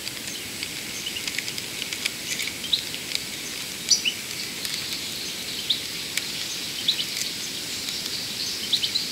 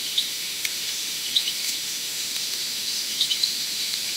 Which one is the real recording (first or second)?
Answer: first